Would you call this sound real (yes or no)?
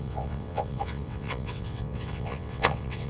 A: no